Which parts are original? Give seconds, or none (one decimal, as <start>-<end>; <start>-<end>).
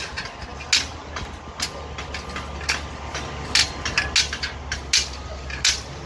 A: 0.0-6.1